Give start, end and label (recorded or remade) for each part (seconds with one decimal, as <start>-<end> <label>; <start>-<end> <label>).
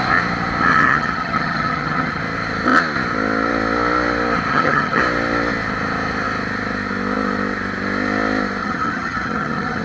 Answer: 0.0-0.7 recorded; 0.7-2.2 remade; 2.2-4.5 recorded; 4.5-5.0 remade; 5.0-8.6 recorded; 8.6-9.8 remade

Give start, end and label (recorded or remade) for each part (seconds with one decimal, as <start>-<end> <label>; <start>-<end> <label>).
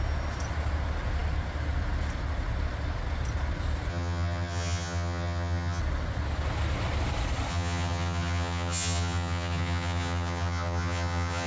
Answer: 0.0-3.9 recorded; 3.9-5.8 remade; 5.8-7.5 recorded; 7.5-11.5 remade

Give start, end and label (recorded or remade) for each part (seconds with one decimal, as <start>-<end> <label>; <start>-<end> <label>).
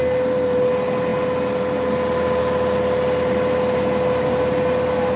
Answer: 0.0-5.2 recorded